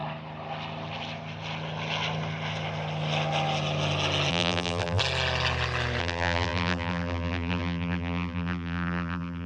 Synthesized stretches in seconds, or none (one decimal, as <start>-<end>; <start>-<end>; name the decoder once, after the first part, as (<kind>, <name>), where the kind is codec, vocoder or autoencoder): 4.3-5.0 (vocoder, BigVGAN v2); 6.0-9.5